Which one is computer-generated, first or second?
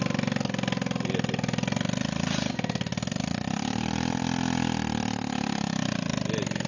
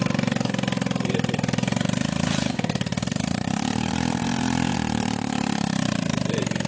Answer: second